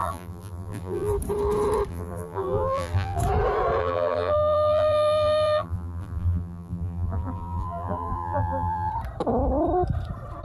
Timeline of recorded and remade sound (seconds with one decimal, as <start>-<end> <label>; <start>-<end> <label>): 0.0-1.1 remade; 1.1-1.9 recorded; 1.9-3.2 remade; 3.2-3.8 recorded; 3.8-8.9 remade; 8.9-10.4 recorded